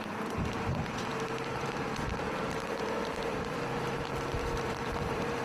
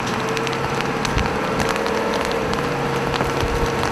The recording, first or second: second